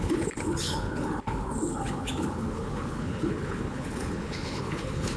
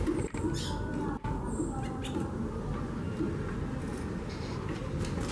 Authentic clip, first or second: second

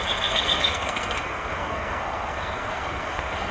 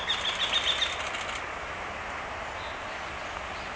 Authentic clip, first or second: second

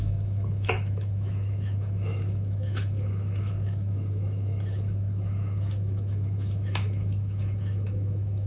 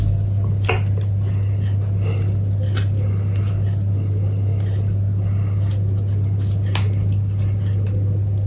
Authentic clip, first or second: second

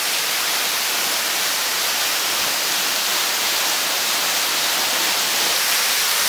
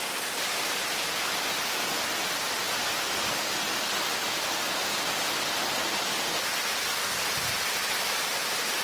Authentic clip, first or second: second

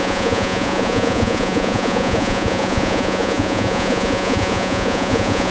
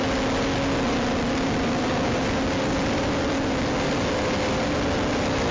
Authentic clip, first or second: second